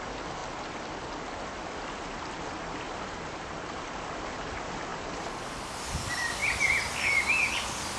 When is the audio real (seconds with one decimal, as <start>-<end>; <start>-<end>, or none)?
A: 0.0-4.9; 6.0-8.0